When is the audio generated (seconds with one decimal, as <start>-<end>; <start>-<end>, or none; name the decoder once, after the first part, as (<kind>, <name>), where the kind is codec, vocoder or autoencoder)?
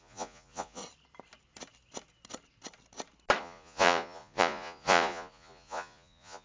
0.0-0.8 (vocoder, Vocos); 3.4-6.4